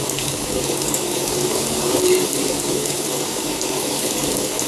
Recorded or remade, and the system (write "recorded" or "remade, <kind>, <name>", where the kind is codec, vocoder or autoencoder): remade, codec, DAC